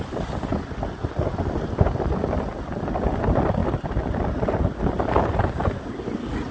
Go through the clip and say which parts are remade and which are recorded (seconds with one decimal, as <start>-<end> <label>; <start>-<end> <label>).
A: 0.0-6.5 recorded